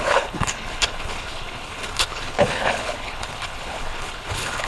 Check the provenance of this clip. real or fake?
fake